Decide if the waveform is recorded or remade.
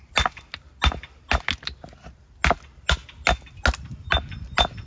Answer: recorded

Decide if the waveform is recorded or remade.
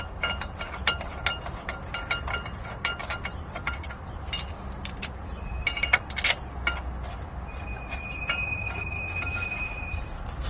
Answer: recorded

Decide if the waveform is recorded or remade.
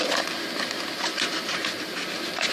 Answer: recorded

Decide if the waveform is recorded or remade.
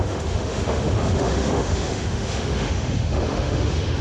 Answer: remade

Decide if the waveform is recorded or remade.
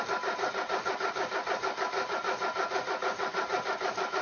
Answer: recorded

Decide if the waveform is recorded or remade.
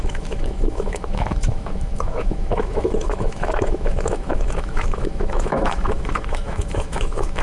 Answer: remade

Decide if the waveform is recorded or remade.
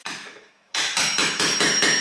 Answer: remade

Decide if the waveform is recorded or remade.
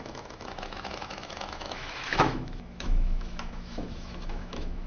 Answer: remade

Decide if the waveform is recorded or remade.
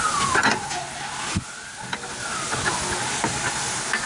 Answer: recorded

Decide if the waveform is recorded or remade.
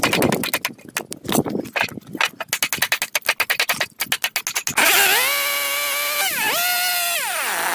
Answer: recorded